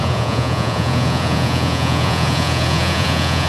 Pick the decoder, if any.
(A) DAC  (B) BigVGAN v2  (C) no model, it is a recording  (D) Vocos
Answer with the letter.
D